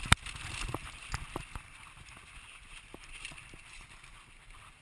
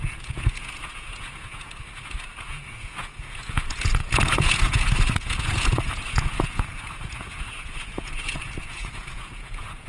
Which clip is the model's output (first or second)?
second